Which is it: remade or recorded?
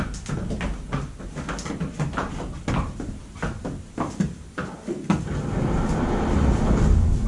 recorded